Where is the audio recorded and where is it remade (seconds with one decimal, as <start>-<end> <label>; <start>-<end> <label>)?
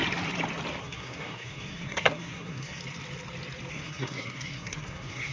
0.0-0.8 recorded; 0.8-2.8 remade; 2.8-3.7 recorded; 3.7-5.3 remade